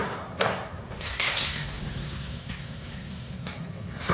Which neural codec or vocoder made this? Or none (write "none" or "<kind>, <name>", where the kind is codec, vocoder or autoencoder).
codec, SNAC